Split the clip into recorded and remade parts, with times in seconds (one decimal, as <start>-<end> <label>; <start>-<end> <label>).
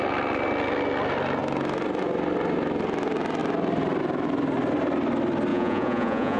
0.0-5.5 recorded; 5.5-6.4 remade